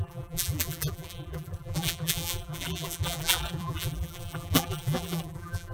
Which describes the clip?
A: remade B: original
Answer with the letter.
A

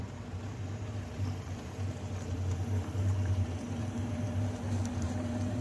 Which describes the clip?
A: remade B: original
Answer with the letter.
A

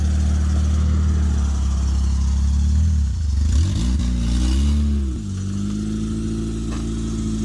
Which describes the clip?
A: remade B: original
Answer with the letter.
B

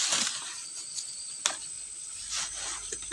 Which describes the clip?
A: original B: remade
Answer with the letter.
A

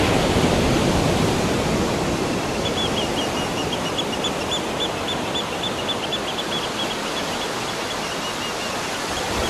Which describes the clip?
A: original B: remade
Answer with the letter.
B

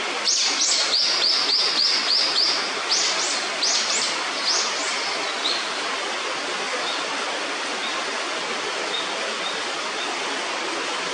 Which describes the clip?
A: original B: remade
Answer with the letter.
A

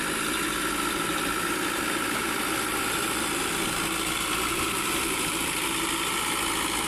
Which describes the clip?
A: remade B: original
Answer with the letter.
A